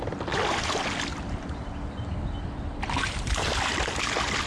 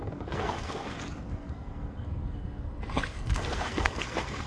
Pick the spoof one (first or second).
second